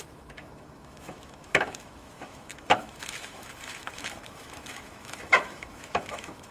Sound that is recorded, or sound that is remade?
remade